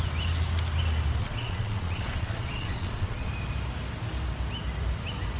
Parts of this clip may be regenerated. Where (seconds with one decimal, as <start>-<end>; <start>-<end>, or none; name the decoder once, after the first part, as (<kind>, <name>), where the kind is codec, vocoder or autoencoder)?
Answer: 1.2-3.3 (vocoder, Vocos)